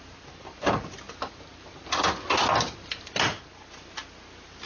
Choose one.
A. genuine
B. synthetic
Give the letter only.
A